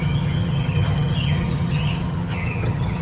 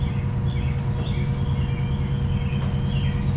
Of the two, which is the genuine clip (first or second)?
second